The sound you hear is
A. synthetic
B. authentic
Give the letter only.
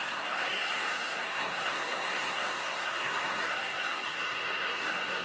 A